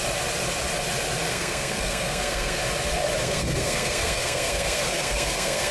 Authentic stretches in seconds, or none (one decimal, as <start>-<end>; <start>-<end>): 0.0-1.3; 2.6-3.2